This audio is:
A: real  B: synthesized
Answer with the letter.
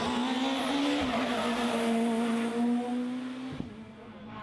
A